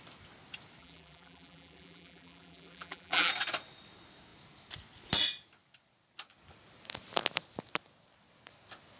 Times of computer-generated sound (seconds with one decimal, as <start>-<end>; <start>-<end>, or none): 0.8-3.3